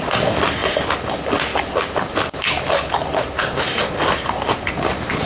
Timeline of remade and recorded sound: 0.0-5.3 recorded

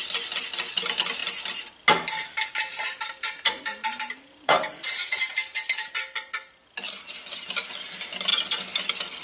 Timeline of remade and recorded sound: 0.0-2.7 recorded; 2.7-5.3 remade; 5.3-9.2 recorded

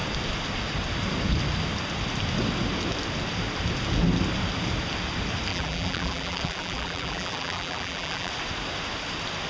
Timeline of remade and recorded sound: 0.0-5.5 recorded; 5.5-8.3 remade; 8.3-9.5 recorded